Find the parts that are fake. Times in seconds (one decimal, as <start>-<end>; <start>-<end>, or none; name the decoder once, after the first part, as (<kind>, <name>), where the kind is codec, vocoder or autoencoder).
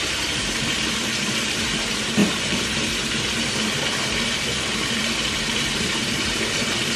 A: 0.0-7.0 (vocoder, BigVGAN v2)